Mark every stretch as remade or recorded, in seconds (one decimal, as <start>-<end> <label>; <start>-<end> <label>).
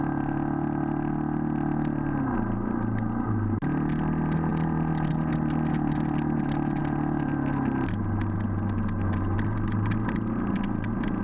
0.0-11.2 recorded